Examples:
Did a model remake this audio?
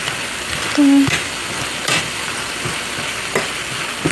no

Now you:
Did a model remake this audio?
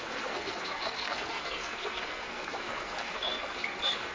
yes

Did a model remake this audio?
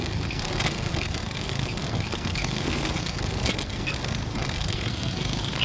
yes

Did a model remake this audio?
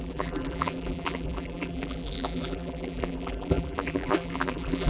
yes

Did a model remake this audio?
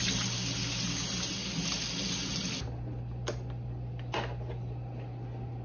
no